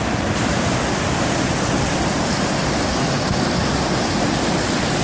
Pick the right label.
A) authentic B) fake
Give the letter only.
A